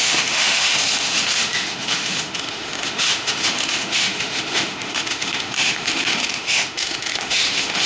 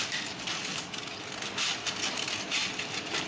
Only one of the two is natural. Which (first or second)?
second